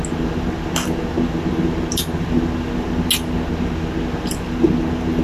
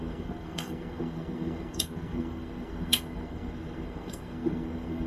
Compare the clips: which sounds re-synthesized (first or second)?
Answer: second